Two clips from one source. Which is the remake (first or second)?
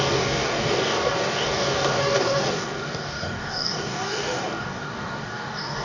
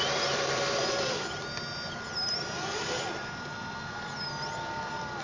first